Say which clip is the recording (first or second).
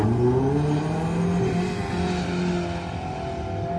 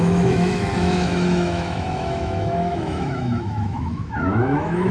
first